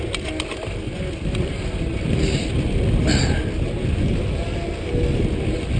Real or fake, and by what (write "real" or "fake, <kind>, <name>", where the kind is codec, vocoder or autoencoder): real